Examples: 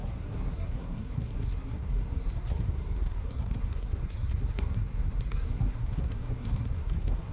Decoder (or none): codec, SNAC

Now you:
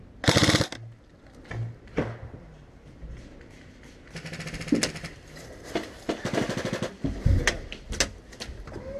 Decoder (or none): none